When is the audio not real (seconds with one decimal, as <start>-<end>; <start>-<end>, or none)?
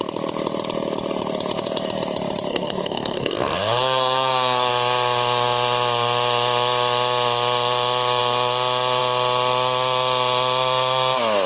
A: 2.5-4.7